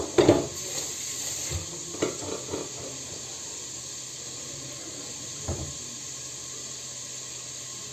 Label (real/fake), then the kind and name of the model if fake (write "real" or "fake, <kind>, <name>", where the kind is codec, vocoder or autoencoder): fake, vocoder, BigVGAN v2